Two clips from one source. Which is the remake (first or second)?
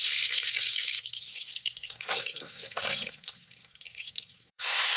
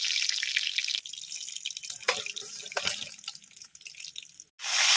first